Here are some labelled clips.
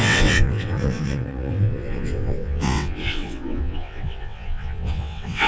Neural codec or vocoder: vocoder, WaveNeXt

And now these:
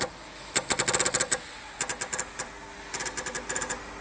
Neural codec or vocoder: none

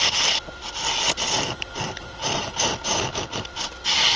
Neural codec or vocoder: none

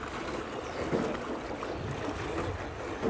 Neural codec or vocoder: none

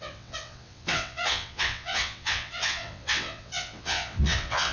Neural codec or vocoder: vocoder, WaveNeXt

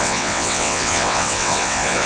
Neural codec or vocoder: vocoder, WaveNeXt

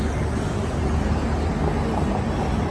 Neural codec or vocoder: none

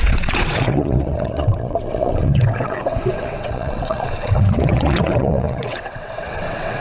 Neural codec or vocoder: vocoder, WaveNeXt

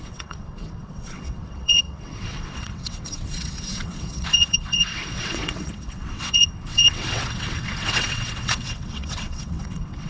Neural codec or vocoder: vocoder, WaveNeXt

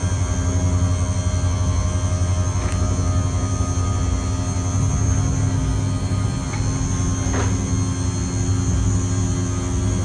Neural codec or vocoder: none